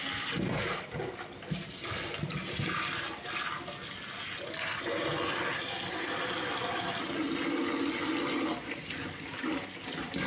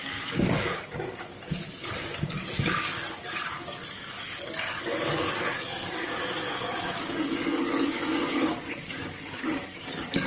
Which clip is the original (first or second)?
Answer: first